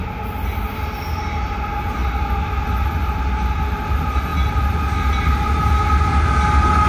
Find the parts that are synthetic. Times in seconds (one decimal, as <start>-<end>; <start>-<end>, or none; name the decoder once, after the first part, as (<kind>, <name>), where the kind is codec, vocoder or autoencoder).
none